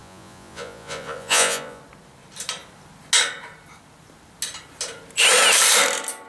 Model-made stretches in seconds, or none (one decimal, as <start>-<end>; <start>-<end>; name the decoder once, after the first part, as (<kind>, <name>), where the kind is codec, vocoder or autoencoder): 0.0-1.8 (vocoder, Vocos)